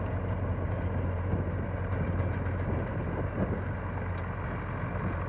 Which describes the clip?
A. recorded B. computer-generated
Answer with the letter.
A